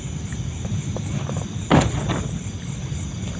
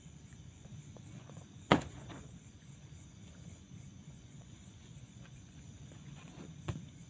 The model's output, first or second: second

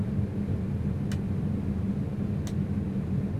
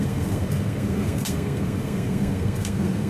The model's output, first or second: second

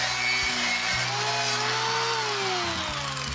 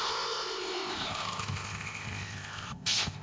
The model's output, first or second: second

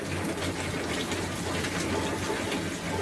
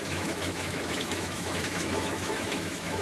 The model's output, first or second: second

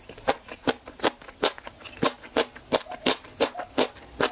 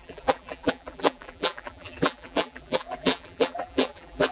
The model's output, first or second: second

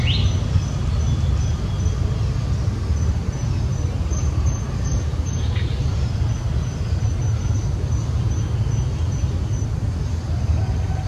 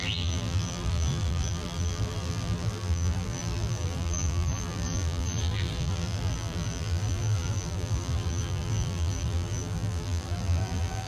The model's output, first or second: second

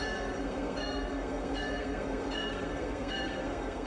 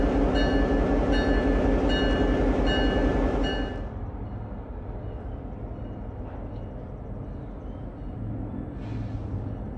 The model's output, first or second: first